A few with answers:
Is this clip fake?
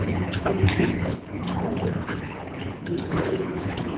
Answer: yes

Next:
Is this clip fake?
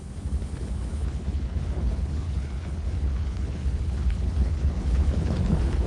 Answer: yes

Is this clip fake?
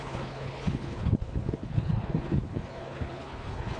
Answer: yes